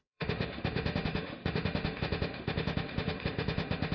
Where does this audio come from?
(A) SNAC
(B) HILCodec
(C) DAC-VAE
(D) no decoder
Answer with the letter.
C